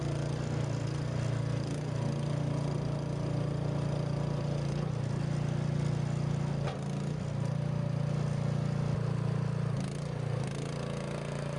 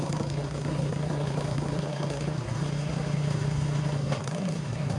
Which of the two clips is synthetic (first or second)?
second